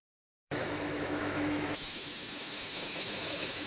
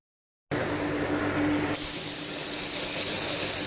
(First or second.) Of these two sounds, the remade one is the first